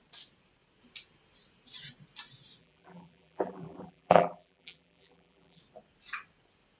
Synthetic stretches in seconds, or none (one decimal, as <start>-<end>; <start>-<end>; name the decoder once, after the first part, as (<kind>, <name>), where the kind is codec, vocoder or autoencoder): 2.6-5.6 (vocoder, BigVGAN v2)